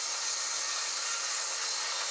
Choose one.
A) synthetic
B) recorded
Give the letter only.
B